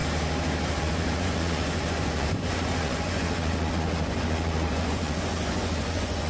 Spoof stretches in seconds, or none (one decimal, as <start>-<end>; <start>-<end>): 0.8-6.3